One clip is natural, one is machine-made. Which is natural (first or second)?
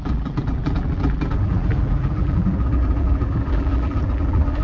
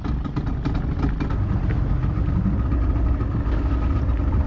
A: second